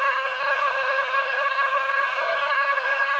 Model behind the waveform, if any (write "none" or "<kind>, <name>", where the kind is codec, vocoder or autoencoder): codec, SNAC